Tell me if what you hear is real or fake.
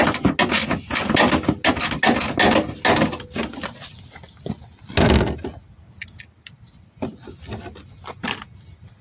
real